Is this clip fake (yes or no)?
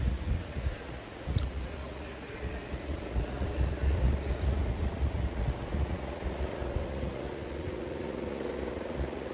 yes